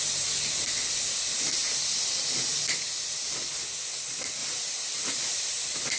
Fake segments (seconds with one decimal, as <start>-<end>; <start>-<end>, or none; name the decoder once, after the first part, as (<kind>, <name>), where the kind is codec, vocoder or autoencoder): none